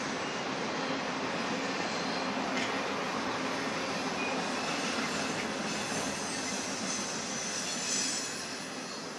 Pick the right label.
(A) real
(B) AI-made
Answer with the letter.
A